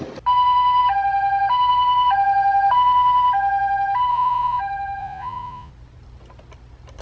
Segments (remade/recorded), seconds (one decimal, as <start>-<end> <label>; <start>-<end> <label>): 0.0-4.1 recorded; 4.1-4.6 remade; 4.6-5.0 recorded; 5.0-5.7 remade; 5.7-7.0 recorded